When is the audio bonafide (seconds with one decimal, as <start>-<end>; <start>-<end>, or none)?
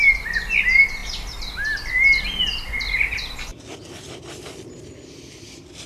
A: 0.0-3.5; 4.7-5.9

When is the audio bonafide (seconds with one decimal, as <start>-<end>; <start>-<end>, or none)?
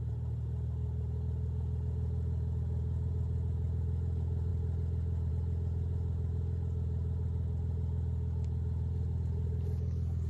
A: 0.0-10.3